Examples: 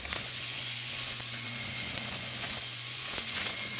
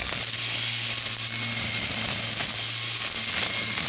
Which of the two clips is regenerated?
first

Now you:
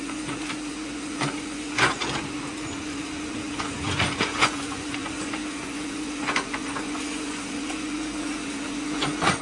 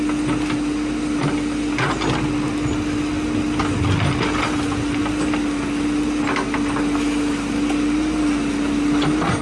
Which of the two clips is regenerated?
first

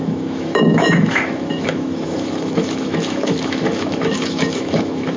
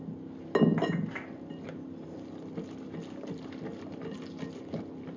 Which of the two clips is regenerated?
first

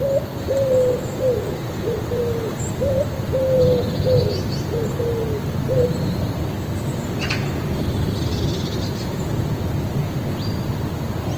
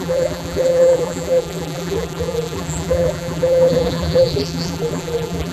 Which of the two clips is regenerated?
second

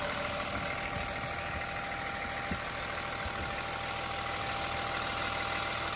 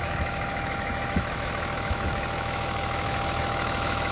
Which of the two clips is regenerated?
second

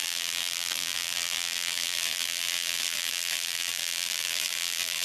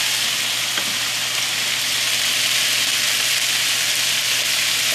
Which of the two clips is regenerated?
first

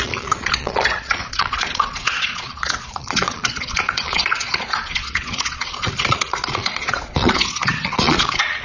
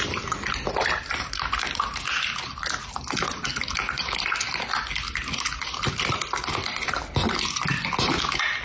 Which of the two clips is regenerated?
first